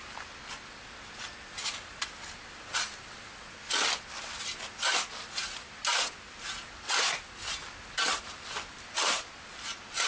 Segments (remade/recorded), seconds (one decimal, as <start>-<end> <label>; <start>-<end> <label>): 0.0-10.1 recorded